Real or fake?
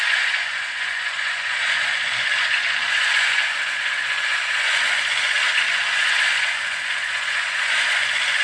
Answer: fake